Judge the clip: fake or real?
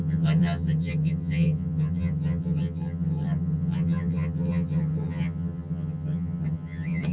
fake